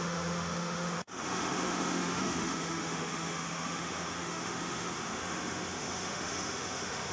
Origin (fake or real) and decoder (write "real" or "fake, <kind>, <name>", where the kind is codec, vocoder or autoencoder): fake, autoencoder, DAC-VAE